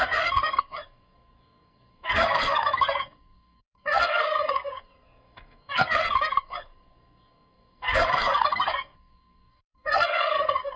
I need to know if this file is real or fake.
fake